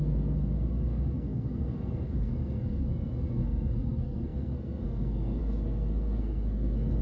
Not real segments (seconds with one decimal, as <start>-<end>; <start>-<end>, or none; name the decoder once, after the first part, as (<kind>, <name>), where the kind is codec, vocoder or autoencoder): 0.0-7.0 (codec, SNAC)